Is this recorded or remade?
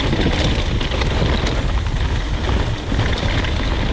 recorded